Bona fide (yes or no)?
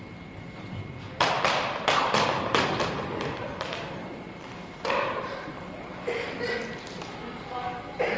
no